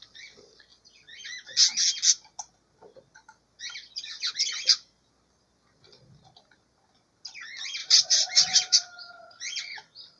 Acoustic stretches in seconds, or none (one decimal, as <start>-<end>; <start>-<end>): 0.0-4.5; 5.1-7.8; 9.1-10.2